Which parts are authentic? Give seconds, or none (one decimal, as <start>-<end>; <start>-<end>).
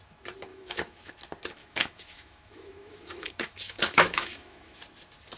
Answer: 0.0-0.5; 1.1-1.6; 4.8-5.4